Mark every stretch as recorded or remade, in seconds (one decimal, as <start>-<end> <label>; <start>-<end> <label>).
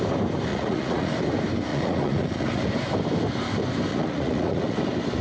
0.0-0.5 recorded; 0.5-1.1 remade; 1.1-1.7 recorded; 1.7-2.6 remade; 2.6-3.9 recorded; 3.9-4.8 remade; 4.8-5.2 recorded